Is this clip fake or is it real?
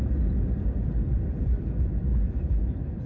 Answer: fake